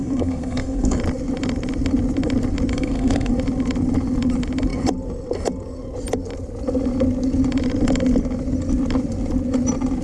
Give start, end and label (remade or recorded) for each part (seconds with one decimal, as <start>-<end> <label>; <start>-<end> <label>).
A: 0.0-1.0 remade; 1.0-2.7 recorded; 2.7-3.3 remade; 3.3-10.0 recorded